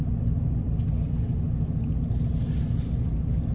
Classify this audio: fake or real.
real